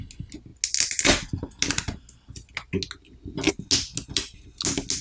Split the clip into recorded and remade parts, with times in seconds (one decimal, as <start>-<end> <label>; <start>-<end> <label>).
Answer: 0.0-5.0 recorded